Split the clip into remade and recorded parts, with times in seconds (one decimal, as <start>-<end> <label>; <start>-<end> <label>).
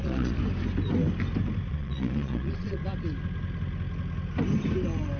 0.0-0.4 remade; 0.4-1.7 recorded; 1.7-2.8 remade; 2.8-5.2 recorded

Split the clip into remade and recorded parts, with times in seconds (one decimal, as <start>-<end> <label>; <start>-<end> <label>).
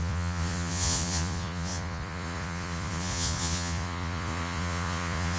0.0-5.4 remade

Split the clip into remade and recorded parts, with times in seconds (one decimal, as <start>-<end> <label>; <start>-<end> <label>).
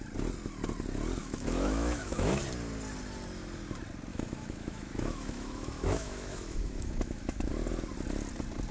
0.0-1.2 recorded; 1.2-2.4 remade; 2.4-4.1 recorded; 4.1-7.5 remade; 7.5-8.7 recorded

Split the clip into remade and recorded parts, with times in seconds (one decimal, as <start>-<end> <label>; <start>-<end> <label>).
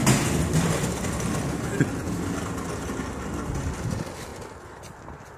0.0-5.4 recorded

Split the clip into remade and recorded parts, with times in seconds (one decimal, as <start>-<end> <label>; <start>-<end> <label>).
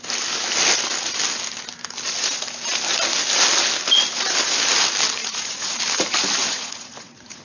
0.0-5.2 recorded; 5.2-5.7 remade; 5.7-6.4 recorded; 6.4-7.4 remade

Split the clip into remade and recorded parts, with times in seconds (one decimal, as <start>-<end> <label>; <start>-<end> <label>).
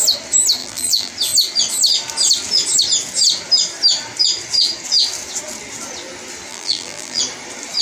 0.0-0.6 recorded; 0.6-1.1 remade; 1.1-6.5 recorded; 6.5-7.2 remade; 7.2-7.8 recorded